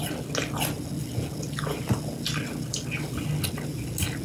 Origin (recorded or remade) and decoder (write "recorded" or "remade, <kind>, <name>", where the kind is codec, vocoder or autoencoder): recorded